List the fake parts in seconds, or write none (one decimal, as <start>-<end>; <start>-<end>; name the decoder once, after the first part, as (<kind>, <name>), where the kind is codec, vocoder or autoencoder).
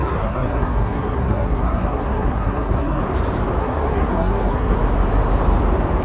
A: 0.0-3.0 (codec, SNAC); 3.6-4.8